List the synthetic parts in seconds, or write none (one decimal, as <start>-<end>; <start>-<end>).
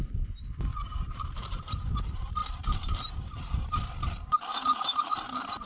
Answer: 0.7-1.9; 2.4-3.9; 4.5-5.1